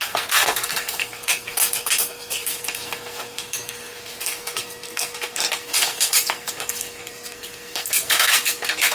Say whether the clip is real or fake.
fake